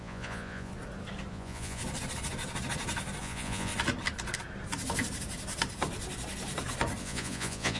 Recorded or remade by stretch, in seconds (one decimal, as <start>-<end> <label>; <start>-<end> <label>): 0.0-0.7 remade; 0.7-1.3 recorded; 1.3-1.8 remade; 1.8-3.2 recorded; 3.2-3.7 remade; 3.7-7.0 recorded; 7.0-7.8 remade